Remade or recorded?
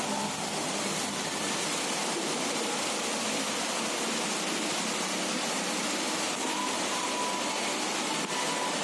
recorded